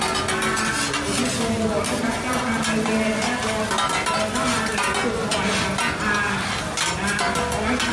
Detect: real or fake real